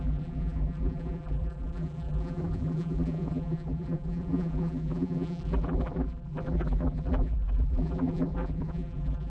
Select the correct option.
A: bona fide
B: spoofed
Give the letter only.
B